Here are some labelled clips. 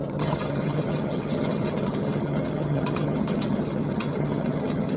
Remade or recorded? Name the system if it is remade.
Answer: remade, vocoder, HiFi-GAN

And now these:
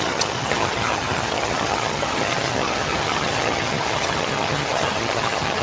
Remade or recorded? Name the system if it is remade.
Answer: remade, vocoder, HiFi-GAN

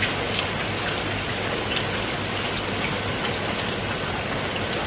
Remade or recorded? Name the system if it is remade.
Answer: recorded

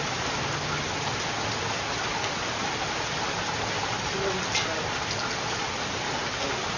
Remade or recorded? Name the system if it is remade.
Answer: recorded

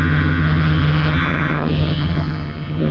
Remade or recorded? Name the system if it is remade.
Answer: remade, vocoder, HiFi-GAN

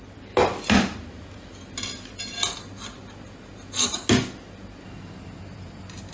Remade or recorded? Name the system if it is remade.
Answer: recorded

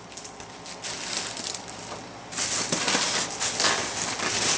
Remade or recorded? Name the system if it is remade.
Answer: recorded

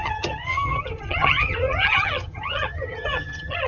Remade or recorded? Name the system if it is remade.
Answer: remade, vocoder, HiFi-GAN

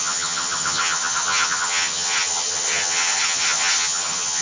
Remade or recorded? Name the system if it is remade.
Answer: remade, vocoder, HiFi-GAN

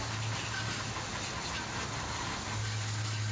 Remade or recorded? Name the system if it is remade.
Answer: recorded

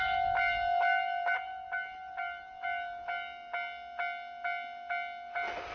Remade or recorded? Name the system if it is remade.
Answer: recorded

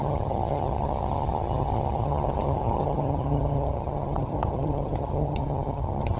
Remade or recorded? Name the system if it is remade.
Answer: remade, vocoder, HiFi-GAN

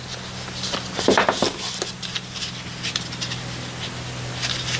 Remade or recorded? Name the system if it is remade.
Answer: recorded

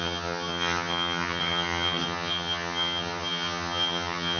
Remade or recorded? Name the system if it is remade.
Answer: remade, vocoder, HiFi-GAN